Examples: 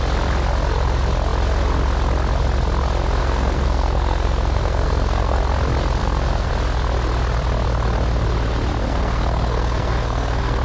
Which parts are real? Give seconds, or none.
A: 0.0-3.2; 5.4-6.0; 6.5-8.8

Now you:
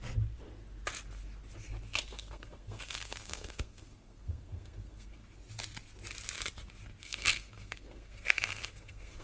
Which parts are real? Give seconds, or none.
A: 0.0-2.1; 5.2-7.0